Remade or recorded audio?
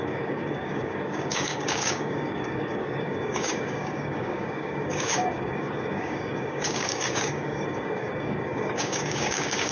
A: remade